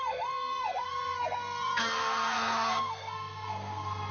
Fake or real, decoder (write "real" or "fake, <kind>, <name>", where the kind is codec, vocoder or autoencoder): fake, codec, SNAC